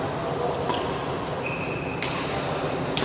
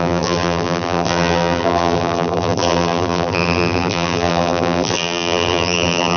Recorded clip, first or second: first